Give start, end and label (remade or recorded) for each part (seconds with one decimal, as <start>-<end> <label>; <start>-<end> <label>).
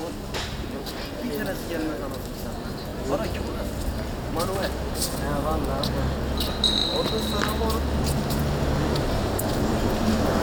0.0-0.8 remade; 0.8-2.9 recorded; 2.9-4.2 remade; 4.2-10.4 recorded